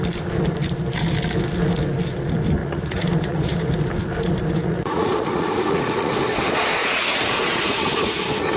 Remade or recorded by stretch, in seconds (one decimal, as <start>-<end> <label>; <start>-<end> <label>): 0.0-2.6 recorded; 2.6-3.7 remade; 3.7-4.6 recorded; 4.6-6.2 remade; 6.2-6.8 recorded; 6.8-8.2 remade; 8.2-8.6 recorded

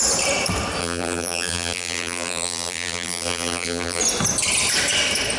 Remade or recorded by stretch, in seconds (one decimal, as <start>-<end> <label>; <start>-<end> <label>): 0.0-0.8 recorded; 0.8-4.0 remade; 4.0-5.4 recorded